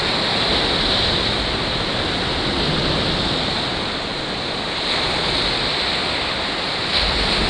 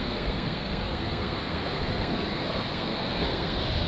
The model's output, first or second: second